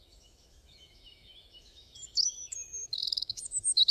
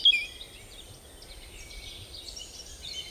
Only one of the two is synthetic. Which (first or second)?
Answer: first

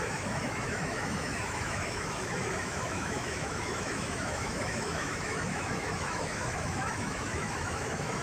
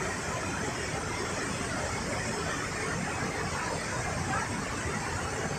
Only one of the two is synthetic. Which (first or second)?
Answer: first